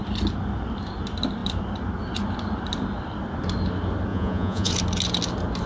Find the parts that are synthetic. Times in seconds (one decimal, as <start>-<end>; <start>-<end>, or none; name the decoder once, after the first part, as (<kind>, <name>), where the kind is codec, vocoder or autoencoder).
4.1-4.7 (vocoder, Vocos)